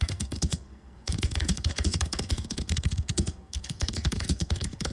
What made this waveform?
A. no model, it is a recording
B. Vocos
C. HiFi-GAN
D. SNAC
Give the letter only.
D